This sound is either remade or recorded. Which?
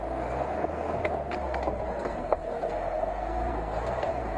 remade